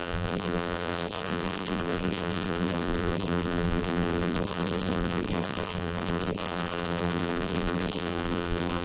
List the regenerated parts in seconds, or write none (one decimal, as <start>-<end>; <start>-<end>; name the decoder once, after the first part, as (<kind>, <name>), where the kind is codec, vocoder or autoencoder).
0.0-8.8 (vocoder, BigVGAN v2)

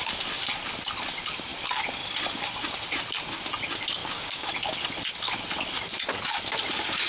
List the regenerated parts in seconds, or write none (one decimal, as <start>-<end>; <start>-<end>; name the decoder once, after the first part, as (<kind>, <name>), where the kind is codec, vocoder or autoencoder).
4.0-4.5 (codec, DAC)

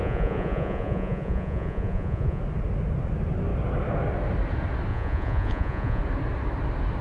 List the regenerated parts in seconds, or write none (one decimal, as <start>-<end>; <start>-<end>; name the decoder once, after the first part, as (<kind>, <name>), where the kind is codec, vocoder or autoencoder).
0.0-2.4 (vocoder, Vocos); 4.9-6.0